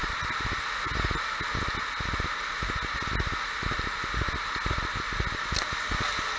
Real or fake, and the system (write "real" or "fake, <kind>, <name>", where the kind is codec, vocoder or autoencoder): real